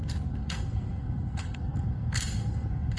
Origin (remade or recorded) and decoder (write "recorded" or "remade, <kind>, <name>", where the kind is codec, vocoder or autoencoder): remade, codec, SNAC